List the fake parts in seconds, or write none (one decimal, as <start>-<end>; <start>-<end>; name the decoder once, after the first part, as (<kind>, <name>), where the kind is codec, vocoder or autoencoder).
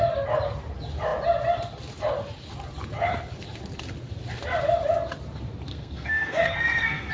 5.7-7.1 (codec, SNAC)